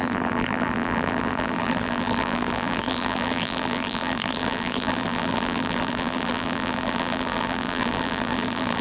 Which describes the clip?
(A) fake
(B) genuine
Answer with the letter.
A